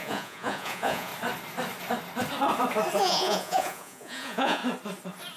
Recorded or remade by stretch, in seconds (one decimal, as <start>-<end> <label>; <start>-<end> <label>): 0.0-1.1 remade; 1.1-3.0 recorded; 3.0-4.6 remade; 4.6-5.4 recorded

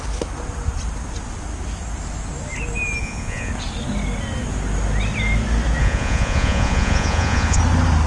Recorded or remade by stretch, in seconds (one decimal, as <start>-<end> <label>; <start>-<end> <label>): 0.0-3.0 recorded; 3.0-3.5 remade; 3.5-5.8 recorded; 5.8-7.6 remade; 7.6-8.1 recorded

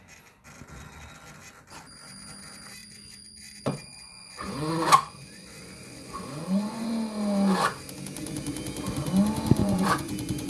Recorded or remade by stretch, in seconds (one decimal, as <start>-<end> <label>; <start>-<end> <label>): 0.0-2.8 recorded; 2.8-6.9 remade; 6.9-9.6 recorded; 9.6-10.5 remade

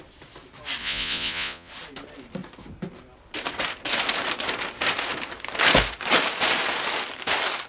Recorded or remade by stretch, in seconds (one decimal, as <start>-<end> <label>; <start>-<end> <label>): 0.0-0.8 recorded; 0.8-1.7 remade; 1.7-7.7 recorded